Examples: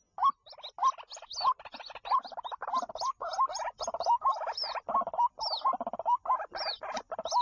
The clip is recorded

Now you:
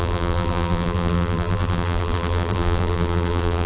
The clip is remade